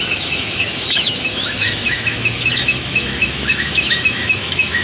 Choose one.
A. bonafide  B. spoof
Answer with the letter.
B